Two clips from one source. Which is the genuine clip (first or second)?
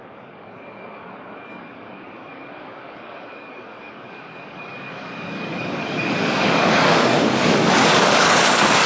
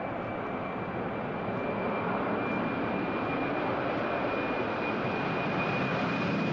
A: second